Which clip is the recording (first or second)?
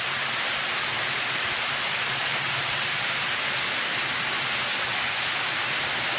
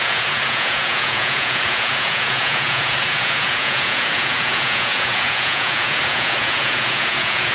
first